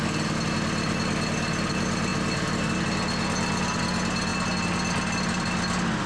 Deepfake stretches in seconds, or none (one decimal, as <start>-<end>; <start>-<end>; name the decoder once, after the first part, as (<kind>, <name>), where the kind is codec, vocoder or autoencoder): none